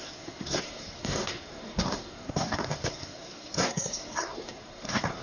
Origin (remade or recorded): remade